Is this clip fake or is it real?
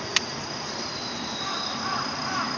real